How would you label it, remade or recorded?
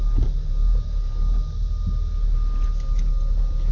recorded